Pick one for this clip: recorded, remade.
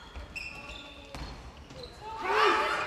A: recorded